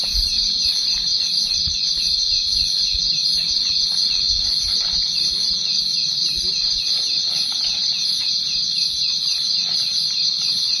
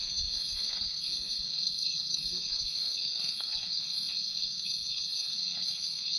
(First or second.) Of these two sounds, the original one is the first